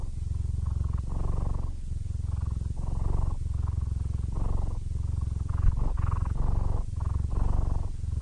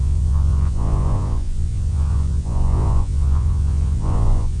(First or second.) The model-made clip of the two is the second